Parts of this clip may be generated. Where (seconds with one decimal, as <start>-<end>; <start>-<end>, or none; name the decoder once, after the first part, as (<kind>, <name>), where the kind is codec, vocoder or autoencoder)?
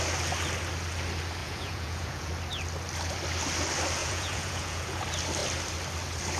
1.4-2.3 (vocoder, Vocos); 4.0-5.0